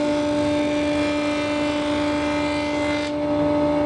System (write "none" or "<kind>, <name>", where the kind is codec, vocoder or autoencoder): none